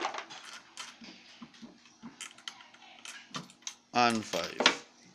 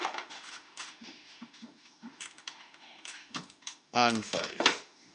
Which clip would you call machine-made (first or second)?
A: second